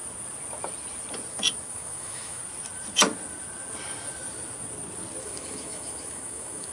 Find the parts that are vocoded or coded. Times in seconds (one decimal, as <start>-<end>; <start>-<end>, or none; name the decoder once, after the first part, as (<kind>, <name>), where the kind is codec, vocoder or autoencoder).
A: 1.7-2.4 (autoencoder, DAC-VAE); 5.2-6.7